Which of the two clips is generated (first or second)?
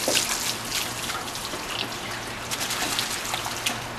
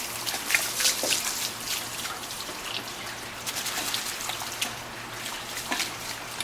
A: second